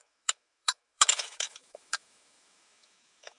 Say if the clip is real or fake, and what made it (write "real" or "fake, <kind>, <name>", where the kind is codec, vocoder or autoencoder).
fake, autoencoder, DAC-VAE